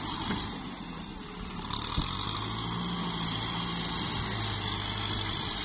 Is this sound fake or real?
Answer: real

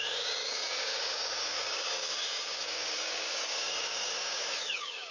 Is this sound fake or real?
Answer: fake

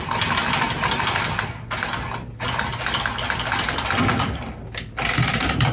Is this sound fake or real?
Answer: real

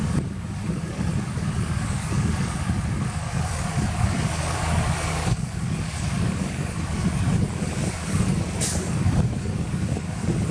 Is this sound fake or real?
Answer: fake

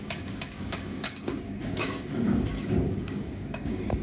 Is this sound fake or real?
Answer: fake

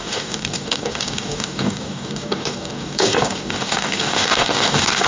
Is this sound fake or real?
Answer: fake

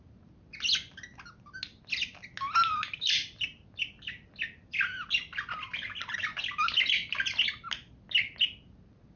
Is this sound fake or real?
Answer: real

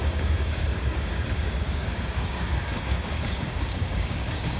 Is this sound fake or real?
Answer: fake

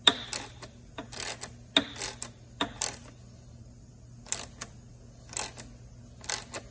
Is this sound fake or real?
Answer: real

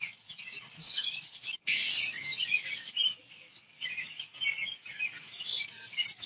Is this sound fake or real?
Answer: fake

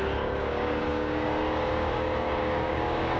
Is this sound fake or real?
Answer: fake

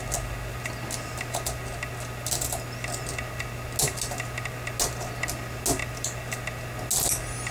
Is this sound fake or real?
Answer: real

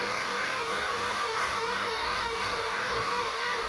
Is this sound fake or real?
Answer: fake